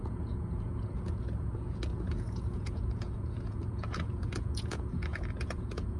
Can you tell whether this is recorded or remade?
remade